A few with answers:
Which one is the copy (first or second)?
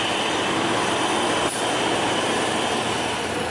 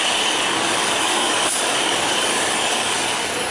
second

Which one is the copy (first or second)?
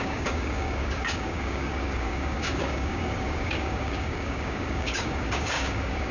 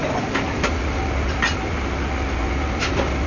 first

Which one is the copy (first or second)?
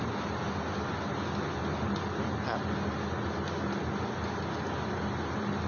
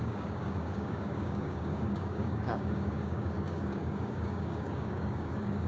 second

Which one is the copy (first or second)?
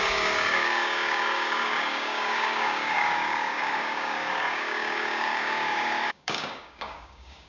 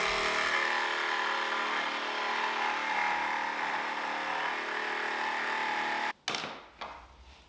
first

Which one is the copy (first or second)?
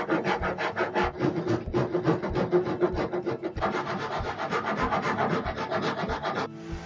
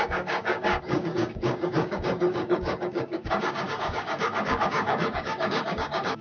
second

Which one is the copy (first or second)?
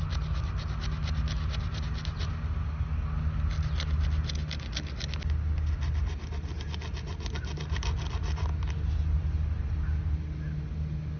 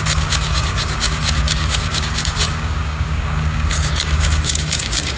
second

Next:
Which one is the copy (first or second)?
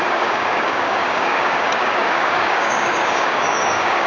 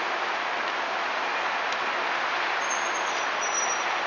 first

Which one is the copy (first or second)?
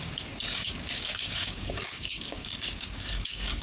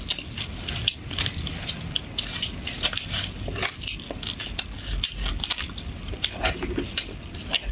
first